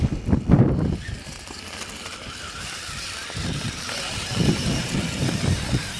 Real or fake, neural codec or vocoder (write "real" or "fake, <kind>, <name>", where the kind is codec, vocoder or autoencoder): fake, vocoder, BigVGAN v2